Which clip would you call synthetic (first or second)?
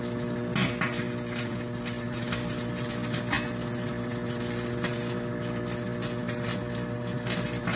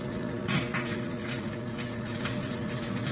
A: second